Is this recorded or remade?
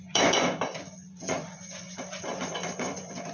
remade